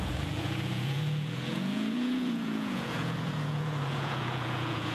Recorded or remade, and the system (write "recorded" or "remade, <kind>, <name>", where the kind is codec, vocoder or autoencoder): remade, vocoder, Vocos